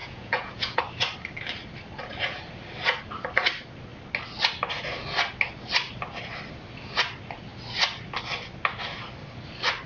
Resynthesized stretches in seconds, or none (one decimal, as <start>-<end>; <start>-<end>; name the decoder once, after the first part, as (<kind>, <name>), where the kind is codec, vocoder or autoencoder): 0.0-0.8 (vocoder, Vocos)